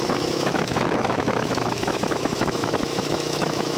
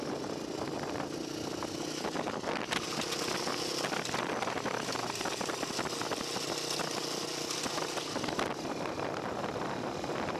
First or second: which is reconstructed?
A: first